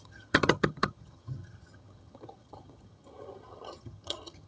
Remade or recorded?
remade